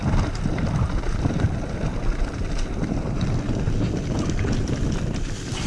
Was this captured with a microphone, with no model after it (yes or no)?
yes